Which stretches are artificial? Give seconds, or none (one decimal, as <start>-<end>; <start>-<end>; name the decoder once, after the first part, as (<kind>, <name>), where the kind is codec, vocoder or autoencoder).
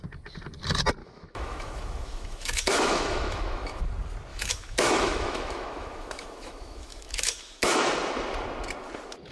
1.0-3.8 (autoencoder, DAC-VAE); 4.3-7.9